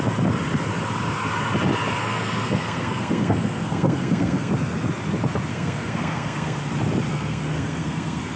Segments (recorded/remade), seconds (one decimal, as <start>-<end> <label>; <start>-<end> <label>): 0.0-2.0 recorded; 2.0-4.5 remade; 4.5-5.5 recorded; 5.5-6.6 remade; 6.6-7.1 recorded; 7.1-8.4 remade